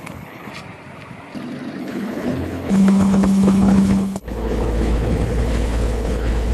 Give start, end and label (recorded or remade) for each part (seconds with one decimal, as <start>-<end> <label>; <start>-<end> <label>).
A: 0.0-0.5 remade; 0.5-1.8 recorded; 1.8-6.5 remade